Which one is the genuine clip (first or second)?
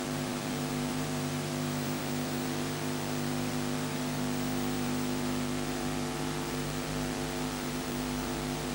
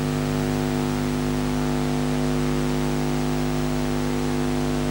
second